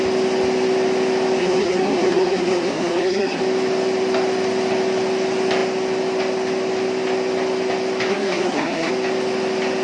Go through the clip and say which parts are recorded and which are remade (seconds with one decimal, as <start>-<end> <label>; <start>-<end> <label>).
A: 0.0-1.4 recorded; 1.4-3.4 remade; 3.4-8.1 recorded; 8.1-8.9 remade; 8.9-9.8 recorded